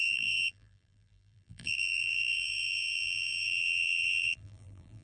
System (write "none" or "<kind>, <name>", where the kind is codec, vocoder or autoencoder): vocoder, BigVGAN v2